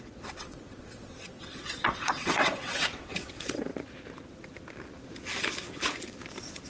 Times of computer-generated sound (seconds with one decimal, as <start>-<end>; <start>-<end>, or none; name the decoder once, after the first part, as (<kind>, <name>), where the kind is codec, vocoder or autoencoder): 0.0-3.7 (vocoder, WaveNeXt)